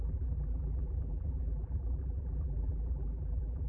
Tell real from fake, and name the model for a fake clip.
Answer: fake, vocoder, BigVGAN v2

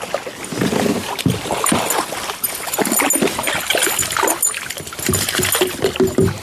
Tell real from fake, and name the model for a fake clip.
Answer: real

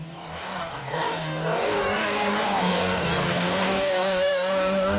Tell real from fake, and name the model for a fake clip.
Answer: fake, codec, DAC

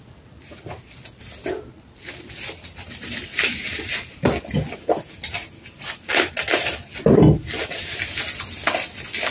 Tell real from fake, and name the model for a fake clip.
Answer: real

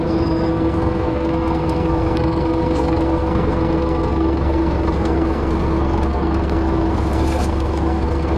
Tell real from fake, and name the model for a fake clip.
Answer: fake, codec, SNAC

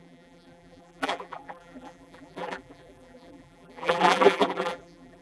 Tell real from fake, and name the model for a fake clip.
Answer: fake, vocoder, BigVGAN v2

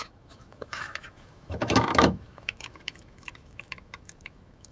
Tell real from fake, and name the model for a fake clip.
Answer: fake, autoencoder, DAC-VAE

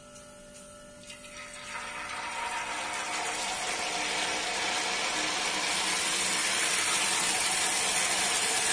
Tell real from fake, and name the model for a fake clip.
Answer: real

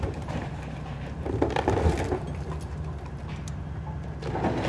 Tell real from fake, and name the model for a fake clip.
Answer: real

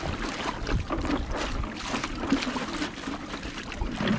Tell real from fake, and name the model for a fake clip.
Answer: real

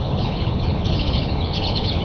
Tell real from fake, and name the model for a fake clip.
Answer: fake, codec, HILCodec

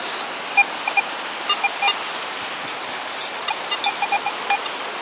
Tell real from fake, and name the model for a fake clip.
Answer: real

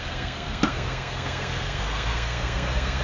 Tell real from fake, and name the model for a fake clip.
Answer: fake, codec, SNAC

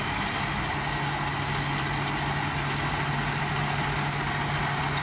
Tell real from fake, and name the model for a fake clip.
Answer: real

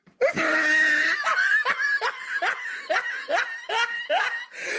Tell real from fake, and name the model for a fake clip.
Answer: real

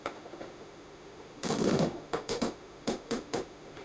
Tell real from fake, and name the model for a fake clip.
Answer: fake, autoencoder, DAC-VAE